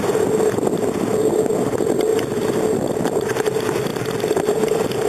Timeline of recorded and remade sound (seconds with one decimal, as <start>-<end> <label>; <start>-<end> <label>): 0.0-5.1 recorded